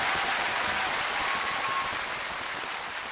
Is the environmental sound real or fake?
real